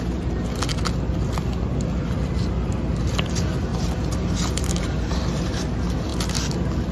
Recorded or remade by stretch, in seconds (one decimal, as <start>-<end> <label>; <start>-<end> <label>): 0.0-3.7 recorded; 3.7-5.2 remade; 5.2-6.9 recorded